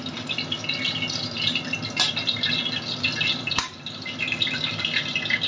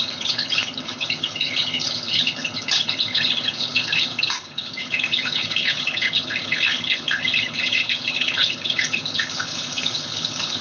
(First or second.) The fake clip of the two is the second